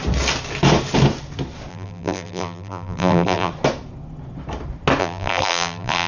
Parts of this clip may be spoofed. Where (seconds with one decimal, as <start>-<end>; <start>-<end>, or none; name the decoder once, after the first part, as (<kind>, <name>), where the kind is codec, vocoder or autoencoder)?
1.7-3.5 (vocoder, BigVGAN v2); 5.0-6.1